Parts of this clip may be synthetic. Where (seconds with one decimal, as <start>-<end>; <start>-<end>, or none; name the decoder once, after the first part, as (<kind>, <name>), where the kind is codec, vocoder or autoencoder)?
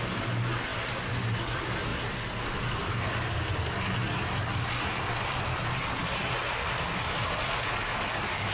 none